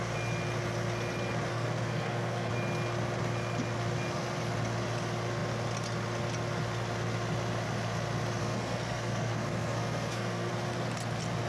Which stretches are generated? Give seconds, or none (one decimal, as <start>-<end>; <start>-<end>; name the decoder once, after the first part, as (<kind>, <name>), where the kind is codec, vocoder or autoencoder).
1.5-2.5 (codec, SNAC); 8.4-10.5